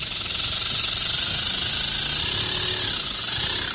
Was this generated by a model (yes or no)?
no